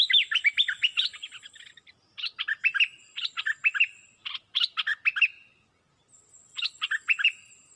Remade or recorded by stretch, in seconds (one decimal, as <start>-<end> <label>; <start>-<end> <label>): 0.0-7.8 recorded